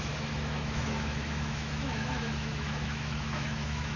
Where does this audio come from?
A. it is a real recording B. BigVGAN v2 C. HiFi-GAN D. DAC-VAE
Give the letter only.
D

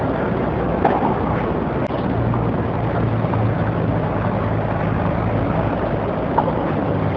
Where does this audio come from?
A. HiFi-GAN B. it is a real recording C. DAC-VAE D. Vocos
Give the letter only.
B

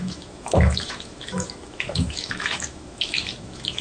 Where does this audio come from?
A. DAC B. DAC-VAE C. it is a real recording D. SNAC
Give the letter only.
B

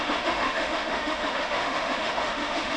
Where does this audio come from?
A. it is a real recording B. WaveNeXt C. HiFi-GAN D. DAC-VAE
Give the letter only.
D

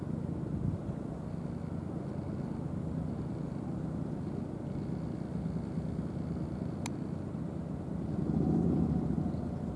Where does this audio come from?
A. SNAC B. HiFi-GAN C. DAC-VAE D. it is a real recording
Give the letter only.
D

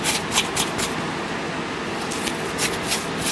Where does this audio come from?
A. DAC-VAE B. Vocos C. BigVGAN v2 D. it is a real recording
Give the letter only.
D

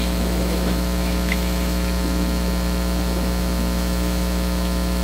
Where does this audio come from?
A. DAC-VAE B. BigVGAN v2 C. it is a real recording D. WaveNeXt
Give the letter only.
A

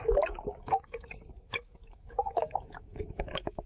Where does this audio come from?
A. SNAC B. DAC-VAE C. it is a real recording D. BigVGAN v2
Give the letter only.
B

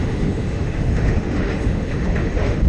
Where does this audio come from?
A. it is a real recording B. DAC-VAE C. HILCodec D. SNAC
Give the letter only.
B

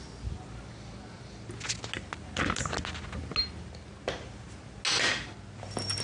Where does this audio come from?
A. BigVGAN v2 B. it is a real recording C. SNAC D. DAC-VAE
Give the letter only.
B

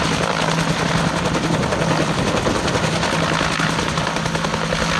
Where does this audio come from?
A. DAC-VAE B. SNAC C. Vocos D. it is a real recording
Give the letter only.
D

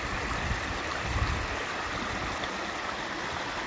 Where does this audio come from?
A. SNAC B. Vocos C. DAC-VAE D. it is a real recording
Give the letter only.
D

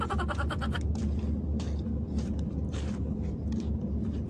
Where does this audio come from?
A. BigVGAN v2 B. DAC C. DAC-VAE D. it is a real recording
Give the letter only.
D